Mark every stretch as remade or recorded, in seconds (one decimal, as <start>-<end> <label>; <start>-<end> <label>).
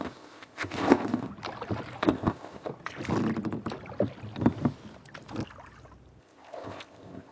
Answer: 0.0-1.3 remade; 1.3-2.0 recorded; 2.0-2.7 remade; 2.7-6.2 recorded; 6.2-7.3 remade